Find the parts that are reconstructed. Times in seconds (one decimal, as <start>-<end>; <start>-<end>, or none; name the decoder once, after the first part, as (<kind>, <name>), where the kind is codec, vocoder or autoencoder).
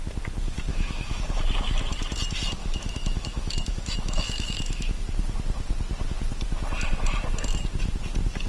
0.7-1.2 (autoencoder, DAC-VAE); 2.6-5.0